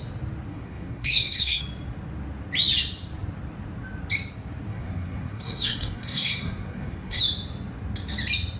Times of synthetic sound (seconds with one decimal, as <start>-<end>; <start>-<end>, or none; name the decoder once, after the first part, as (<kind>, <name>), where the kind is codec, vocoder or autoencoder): 0.5-1.6 (codec, SNAC); 4.7-7.2